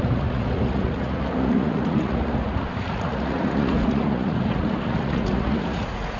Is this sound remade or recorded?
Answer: remade